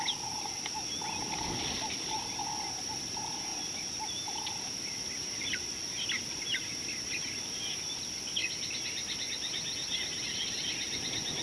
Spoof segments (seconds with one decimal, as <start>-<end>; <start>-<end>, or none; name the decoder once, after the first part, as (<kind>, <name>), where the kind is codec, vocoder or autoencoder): none

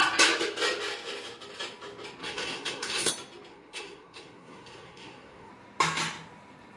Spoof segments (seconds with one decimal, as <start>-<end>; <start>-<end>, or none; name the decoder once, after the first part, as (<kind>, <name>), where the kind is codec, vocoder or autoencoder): 2.2-3.1 (codec, SNAC); 3.5-5.5

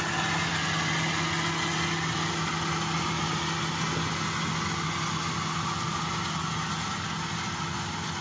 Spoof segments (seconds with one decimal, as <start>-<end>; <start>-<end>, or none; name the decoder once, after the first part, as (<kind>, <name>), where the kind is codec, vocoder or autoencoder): none

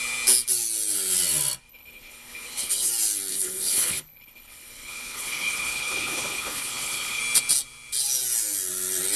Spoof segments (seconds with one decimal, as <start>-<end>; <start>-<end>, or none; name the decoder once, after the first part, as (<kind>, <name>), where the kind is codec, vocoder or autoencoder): 1.7-2.9 (codec, HILCodec); 3.3-7.2

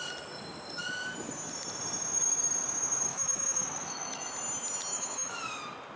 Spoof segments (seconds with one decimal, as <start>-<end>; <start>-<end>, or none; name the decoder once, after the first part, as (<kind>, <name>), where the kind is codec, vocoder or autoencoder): 3.1-4.3 (autoencoder, DAC-VAE); 4.9-5.4